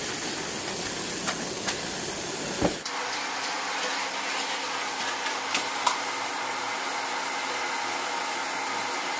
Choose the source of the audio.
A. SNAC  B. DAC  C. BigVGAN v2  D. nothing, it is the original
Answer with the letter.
D